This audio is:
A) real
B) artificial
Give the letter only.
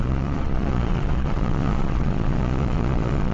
B